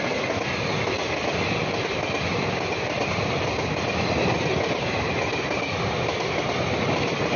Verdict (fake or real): real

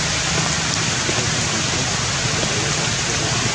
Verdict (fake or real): real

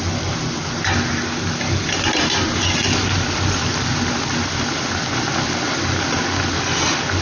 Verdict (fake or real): real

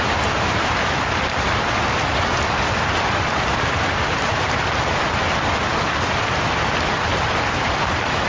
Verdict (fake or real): real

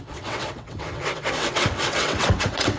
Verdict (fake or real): fake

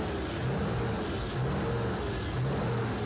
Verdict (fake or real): real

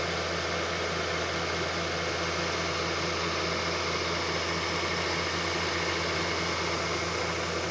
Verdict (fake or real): real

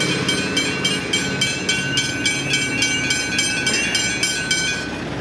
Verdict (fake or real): real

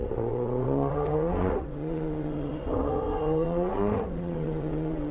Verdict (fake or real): fake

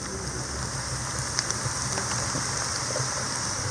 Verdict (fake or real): real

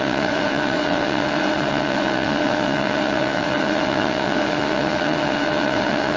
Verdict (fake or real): fake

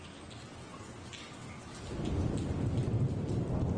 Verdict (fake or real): real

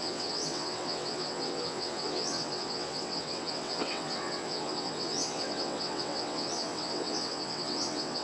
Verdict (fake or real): fake